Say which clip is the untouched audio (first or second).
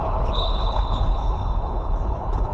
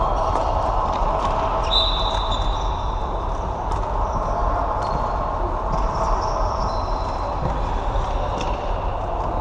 second